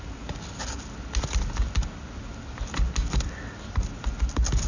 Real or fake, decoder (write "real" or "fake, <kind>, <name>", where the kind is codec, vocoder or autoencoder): real